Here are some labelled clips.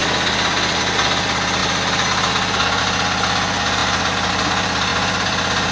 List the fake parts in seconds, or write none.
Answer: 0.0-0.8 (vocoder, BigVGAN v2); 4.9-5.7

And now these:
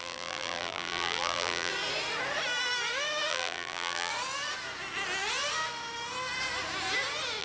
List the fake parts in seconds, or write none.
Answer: 0.0-1.7 (vocoder, BigVGAN v2); 3.3-4.1